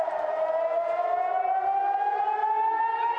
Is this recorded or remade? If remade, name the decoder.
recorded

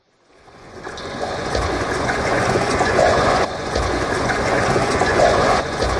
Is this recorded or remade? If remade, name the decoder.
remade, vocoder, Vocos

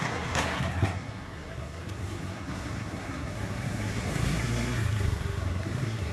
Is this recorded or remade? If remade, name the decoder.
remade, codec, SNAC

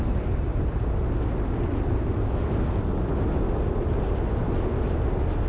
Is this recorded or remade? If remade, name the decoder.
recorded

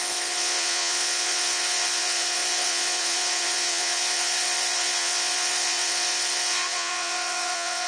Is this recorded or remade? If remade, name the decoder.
remade, vocoder, Vocos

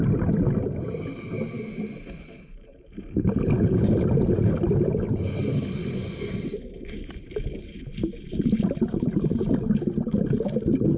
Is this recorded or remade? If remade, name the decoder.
recorded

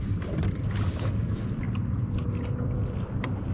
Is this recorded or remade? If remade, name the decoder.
recorded